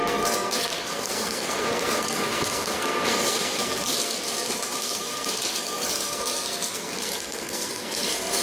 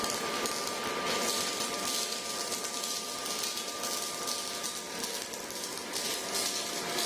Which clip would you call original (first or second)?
second